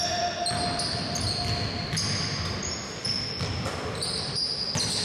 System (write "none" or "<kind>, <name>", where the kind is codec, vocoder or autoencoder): none